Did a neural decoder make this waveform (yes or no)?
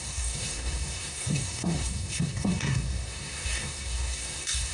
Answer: yes